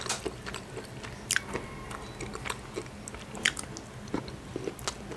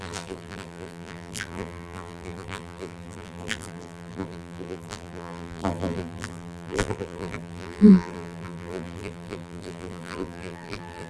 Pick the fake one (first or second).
second